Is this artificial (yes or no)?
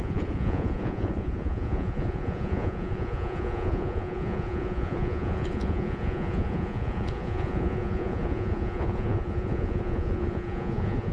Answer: yes